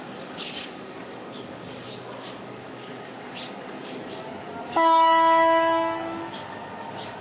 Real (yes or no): no